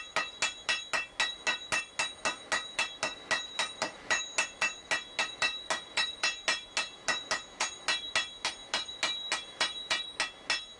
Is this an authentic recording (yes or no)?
yes